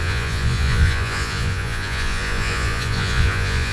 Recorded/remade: remade